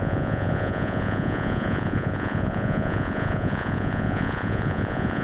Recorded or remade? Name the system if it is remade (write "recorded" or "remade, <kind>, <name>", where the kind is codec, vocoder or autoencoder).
remade, vocoder, Vocos